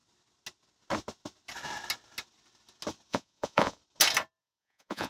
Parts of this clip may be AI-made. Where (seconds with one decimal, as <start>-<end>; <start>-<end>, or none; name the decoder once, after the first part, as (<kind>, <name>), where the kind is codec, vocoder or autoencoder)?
3.1-3.8 (vocoder, Vocos); 4.4-5.1